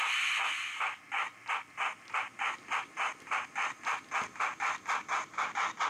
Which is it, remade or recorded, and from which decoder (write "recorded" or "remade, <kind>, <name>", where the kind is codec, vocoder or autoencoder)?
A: recorded